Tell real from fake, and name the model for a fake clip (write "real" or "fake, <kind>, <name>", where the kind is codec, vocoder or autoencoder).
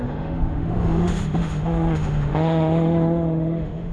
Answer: fake, autoencoder, DAC-VAE